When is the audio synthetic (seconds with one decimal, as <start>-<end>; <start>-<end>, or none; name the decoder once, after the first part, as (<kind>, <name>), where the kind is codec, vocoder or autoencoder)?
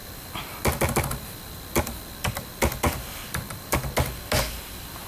1.1-2.5 (vocoder, BigVGAN v2); 4.4-5.1